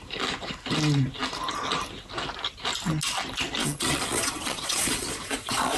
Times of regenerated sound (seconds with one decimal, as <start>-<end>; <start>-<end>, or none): 3.6-5.8